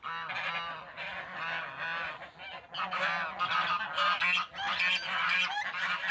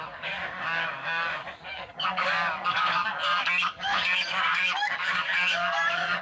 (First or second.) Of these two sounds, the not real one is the second